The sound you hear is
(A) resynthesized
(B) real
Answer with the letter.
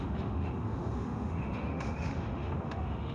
A